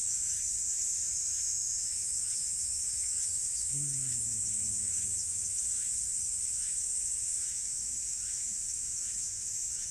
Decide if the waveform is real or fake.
fake